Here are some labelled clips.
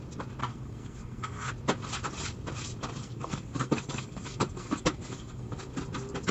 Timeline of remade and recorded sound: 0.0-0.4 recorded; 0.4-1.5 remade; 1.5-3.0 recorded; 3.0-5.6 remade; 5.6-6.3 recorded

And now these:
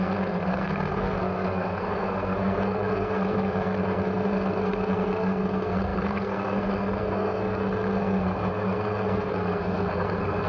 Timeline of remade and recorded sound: 0.0-10.5 remade

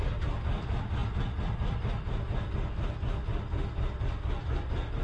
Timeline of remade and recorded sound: 0.0-5.0 recorded

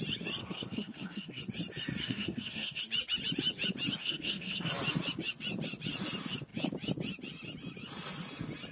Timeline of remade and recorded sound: 0.0-0.4 recorded; 0.4-1.4 remade; 1.4-2.0 recorded; 2.0-2.8 remade; 2.8-4.0 recorded; 4.0-4.7 remade; 4.7-8.7 recorded

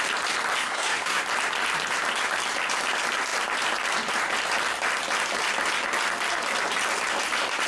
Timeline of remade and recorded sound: 0.0-0.6 recorded; 0.6-1.2 remade; 1.2-7.7 recorded

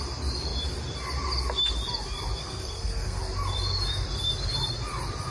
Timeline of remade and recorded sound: 0.0-2.4 recorded; 2.4-3.2 remade; 3.2-5.3 recorded

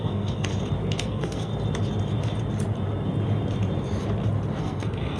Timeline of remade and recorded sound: 0.0-0.5 remade; 0.5-1.0 recorded; 1.0-1.5 remade; 1.5-4.6 recorded; 4.6-5.2 remade